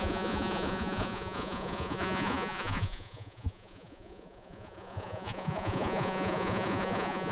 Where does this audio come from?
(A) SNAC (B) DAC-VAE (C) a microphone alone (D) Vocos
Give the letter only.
D